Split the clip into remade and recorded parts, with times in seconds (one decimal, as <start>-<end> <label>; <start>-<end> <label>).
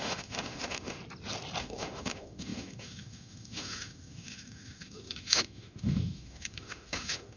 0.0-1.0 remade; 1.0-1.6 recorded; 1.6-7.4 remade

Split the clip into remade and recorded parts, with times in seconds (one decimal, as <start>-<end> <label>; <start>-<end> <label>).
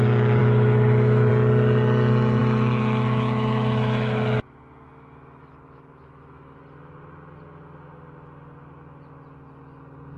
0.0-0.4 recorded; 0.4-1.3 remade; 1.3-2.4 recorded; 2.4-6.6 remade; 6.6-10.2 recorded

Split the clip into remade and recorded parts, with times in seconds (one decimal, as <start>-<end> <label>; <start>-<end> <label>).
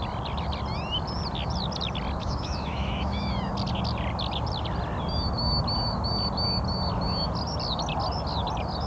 0.0-2.2 recorded; 2.2-3.5 remade; 3.5-8.9 recorded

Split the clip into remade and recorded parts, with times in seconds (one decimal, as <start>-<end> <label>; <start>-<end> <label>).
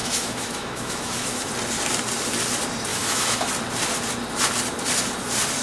0.0-1.5 remade; 1.5-2.9 recorded; 2.9-3.5 remade; 3.5-5.6 recorded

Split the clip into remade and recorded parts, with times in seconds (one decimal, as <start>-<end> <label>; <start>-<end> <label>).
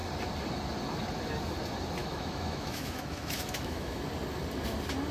0.0-2.0 recorded; 2.0-4.0 remade; 4.0-5.1 recorded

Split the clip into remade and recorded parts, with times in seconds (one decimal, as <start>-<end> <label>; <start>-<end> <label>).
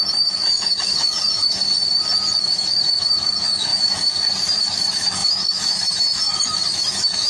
0.0-1.6 remade; 1.6-2.4 recorded; 2.4-7.3 remade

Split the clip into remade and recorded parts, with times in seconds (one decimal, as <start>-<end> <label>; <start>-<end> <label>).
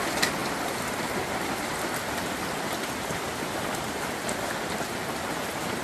0.0-5.8 recorded